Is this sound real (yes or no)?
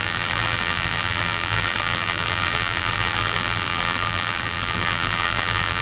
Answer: no